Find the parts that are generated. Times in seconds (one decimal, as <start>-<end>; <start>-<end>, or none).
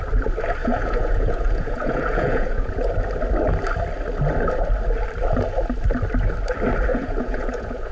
0.6-2.9; 6.9-7.9